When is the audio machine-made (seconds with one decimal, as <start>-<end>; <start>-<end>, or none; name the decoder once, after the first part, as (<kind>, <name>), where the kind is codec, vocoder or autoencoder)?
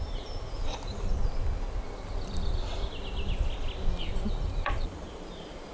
0.0-0.6 (vocoder, BigVGAN v2); 4.0-5.7